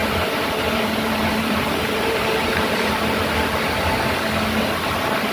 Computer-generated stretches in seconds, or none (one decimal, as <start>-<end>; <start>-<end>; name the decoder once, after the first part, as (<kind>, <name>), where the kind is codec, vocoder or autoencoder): 0.0-3.2 (vocoder, BigVGAN v2)